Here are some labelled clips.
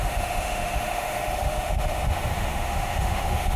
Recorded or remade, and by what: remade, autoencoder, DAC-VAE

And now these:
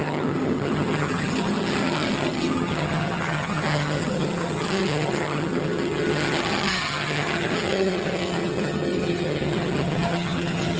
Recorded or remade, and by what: remade, vocoder, HiFi-GAN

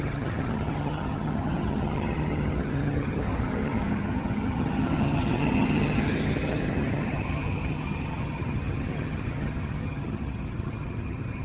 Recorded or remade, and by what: remade, vocoder, HiFi-GAN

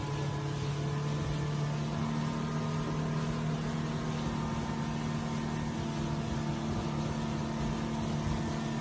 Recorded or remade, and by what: recorded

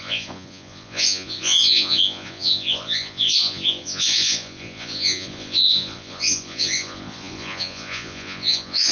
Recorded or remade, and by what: remade, vocoder, Vocos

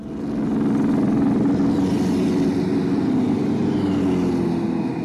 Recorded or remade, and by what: recorded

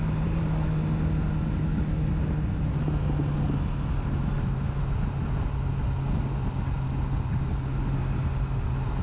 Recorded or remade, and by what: recorded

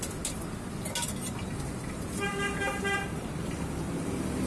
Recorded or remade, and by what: recorded